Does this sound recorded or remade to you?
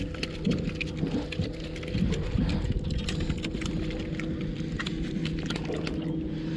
recorded